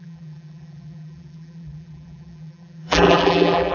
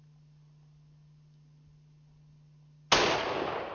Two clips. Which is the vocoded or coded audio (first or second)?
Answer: first